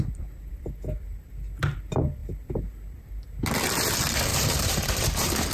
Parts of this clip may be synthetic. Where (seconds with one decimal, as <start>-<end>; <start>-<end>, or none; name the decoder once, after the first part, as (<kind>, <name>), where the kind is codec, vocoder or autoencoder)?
4.3-5.5 (vocoder, BigVGAN v2)